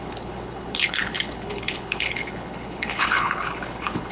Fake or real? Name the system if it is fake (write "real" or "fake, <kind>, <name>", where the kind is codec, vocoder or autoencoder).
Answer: fake, codec, HILCodec